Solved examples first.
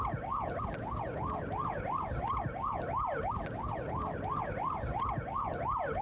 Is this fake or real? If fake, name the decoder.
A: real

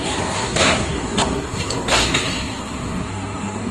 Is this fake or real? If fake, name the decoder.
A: fake, codec, SNAC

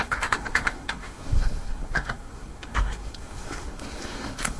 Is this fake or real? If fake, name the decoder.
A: fake, codec, SNAC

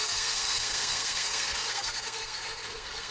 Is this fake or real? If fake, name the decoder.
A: fake, codec, SNAC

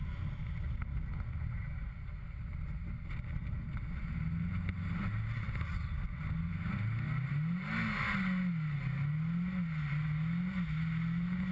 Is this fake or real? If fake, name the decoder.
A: real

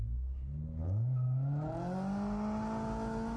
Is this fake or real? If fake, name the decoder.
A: real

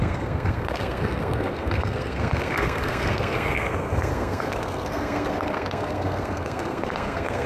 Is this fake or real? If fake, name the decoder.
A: fake, codec, SNAC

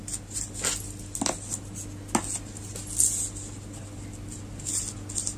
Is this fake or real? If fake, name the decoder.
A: real